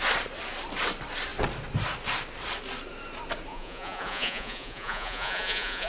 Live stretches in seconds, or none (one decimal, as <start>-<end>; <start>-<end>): 0.0-3.5